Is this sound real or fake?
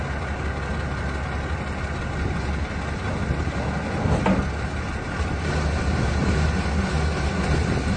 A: real